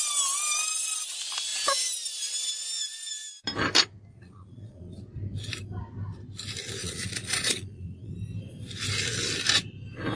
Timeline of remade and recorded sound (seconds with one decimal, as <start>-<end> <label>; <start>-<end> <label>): 0.0-4.1 recorded; 4.1-5.0 remade; 5.0-6.8 recorded; 6.8-8.1 remade; 8.1-10.2 recorded